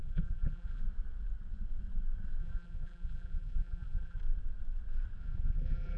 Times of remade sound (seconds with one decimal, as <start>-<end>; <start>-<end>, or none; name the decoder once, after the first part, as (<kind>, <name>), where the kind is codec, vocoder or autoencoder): 0.0-0.8 (vocoder, BigVGAN v2); 2.4-4.2; 5.2-6.0